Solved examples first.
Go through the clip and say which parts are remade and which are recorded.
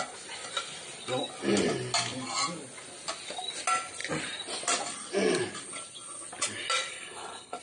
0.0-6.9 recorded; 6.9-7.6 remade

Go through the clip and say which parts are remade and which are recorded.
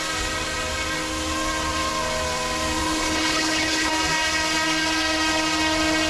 0.0-2.8 recorded; 2.8-3.9 remade; 3.9-6.1 recorded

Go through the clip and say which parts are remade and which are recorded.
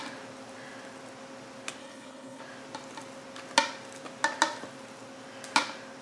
0.0-1.8 recorded; 1.8-2.4 remade; 2.4-6.0 recorded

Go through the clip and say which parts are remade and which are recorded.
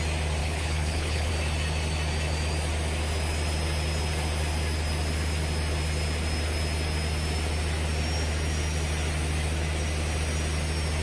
0.0-0.4 recorded; 0.4-1.3 remade; 1.3-11.0 recorded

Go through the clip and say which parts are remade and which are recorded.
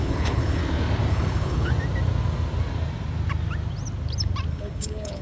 0.0-0.6 remade; 0.6-1.1 recorded; 1.1-1.7 remade; 1.7-4.5 recorded; 4.5-5.2 remade